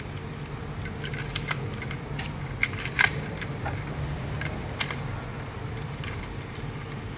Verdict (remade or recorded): recorded